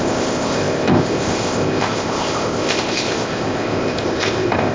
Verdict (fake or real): fake